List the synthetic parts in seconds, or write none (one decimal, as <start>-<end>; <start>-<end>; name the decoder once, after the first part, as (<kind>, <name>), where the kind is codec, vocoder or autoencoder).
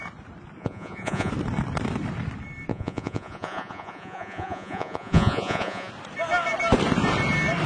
0.6-1.3 (vocoder, Vocos); 2.7-5.9